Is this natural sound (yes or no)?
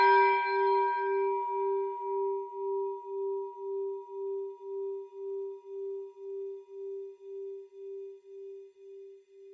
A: no